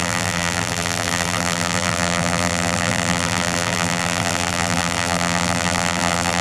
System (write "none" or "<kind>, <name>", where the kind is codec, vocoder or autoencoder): vocoder, BigVGAN v2